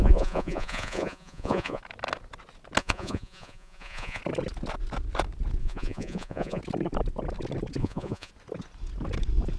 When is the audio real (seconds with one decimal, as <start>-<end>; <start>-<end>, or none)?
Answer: 1.8-2.8; 4.2-5.6; 6.6-7.8; 8.3-9.6